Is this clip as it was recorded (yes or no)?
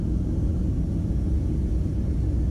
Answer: yes